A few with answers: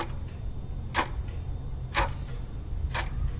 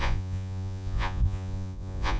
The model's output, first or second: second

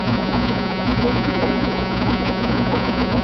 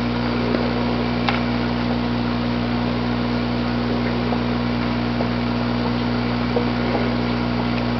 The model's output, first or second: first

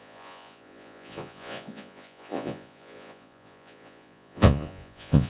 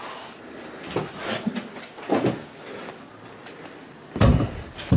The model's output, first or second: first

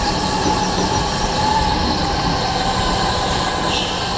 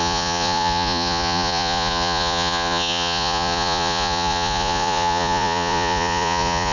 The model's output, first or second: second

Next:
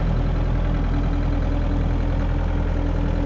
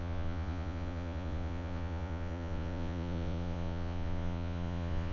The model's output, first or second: second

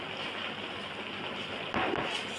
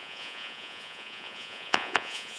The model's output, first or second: second